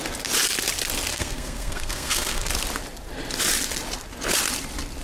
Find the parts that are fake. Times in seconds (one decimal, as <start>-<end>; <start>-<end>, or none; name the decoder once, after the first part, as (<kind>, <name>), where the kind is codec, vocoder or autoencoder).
1.1-2.5 (codec, SNAC)